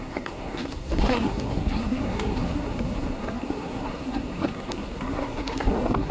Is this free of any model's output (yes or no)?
no